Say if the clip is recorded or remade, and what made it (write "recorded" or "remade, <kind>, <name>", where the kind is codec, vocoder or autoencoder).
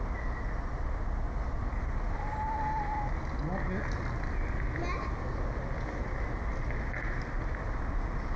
recorded